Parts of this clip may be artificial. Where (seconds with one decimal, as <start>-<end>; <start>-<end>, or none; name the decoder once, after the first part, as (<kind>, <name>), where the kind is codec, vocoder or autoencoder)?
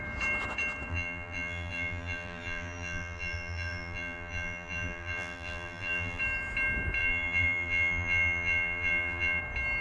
0.9-6.2 (vocoder, BigVGAN v2); 7.0-9.4